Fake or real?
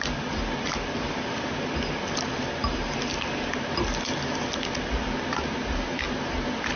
real